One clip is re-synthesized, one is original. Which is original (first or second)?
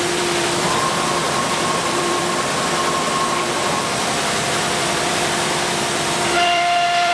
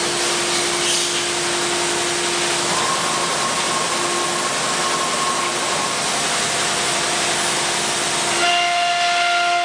second